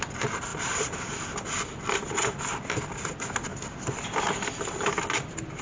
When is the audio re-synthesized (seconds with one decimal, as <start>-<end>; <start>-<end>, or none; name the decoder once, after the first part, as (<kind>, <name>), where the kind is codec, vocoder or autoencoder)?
0.5-2.4 (vocoder, BigVGAN v2); 3.5-5.0